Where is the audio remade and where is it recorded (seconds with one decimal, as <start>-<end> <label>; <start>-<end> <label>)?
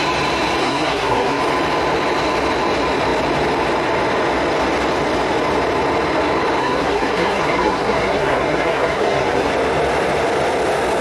0.0-0.6 recorded; 0.6-1.4 remade; 1.4-6.6 recorded; 6.6-9.5 remade; 9.5-11.0 recorded